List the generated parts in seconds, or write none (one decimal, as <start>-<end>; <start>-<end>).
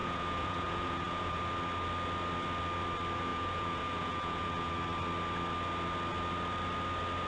0.0-1.4; 3.3-4.7